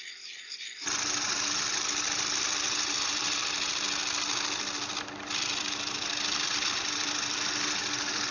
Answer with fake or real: real